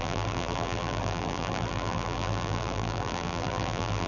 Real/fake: fake